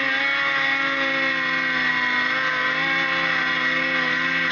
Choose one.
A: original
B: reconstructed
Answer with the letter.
A